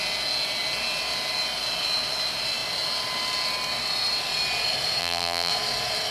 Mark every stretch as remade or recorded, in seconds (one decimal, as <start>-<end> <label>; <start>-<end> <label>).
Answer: 0.0-5.0 recorded; 5.0-5.5 remade; 5.5-6.1 recorded

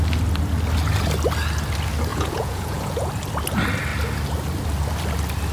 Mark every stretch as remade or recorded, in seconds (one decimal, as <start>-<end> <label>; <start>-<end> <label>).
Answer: 0.0-2.1 recorded; 2.1-3.1 remade; 3.1-5.5 recorded